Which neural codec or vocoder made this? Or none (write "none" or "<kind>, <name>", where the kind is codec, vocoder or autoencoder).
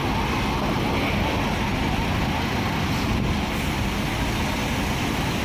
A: none